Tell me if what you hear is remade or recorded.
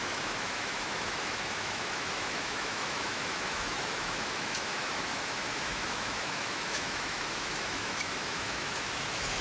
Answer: remade